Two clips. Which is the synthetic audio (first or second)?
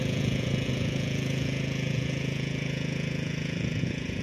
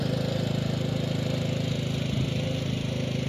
first